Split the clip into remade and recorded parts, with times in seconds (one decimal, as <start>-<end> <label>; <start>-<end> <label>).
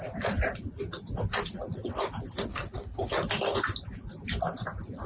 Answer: 0.0-2.5 recorded; 2.5-3.1 remade; 3.1-5.1 recorded